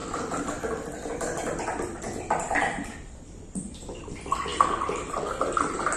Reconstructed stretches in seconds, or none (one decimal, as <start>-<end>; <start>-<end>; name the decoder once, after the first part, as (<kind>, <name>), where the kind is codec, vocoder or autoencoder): 0.0-6.0 (vocoder, BigVGAN v2)